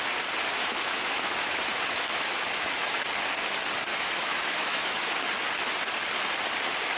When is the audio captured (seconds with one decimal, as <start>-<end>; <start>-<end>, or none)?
0.0-0.5; 3.0-3.9; 5.3-7.0